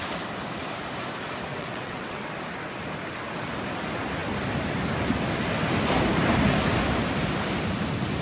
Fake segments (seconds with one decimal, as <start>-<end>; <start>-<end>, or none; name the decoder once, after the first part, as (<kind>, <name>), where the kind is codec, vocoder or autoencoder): 1.5-2.3 (vocoder, WaveNeXt)